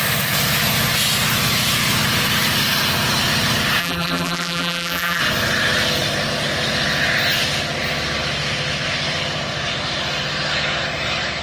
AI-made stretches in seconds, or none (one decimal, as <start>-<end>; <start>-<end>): 3.8-5.2